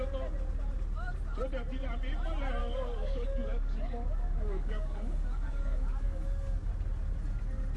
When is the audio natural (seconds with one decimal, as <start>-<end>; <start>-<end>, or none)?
0.0-2.6; 6.7-7.8